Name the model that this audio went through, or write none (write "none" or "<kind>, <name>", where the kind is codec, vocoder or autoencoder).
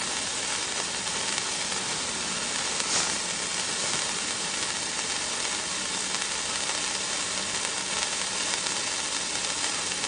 none